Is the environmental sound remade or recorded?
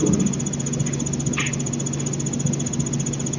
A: recorded